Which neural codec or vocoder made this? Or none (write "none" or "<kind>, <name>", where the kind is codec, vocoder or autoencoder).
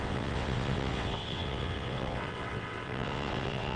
vocoder, WaveNeXt